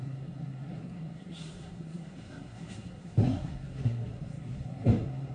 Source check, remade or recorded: remade